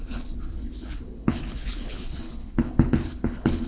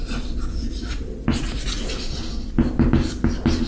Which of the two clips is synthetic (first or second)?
first